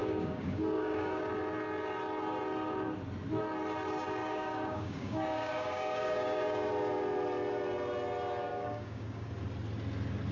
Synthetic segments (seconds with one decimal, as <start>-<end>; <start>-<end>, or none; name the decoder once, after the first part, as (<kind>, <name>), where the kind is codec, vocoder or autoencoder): 0.0-1.2 (codec, DAC); 4.2-6.7; 8.5-9.3